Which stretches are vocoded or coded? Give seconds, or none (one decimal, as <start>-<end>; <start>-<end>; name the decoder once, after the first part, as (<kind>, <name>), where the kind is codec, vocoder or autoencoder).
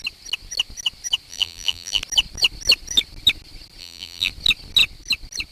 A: 1.3-2.0 (vocoder, BigVGAN v2); 3.8-4.3